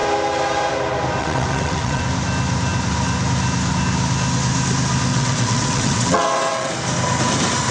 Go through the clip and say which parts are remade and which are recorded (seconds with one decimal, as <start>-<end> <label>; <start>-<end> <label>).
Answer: 0.0-1.2 recorded; 1.2-2.0 remade; 2.0-5.1 recorded; 5.1-6.7 remade; 6.7-7.7 recorded